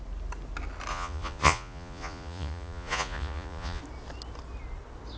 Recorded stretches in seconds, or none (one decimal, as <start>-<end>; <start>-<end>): 0.0-0.9; 3.8-5.2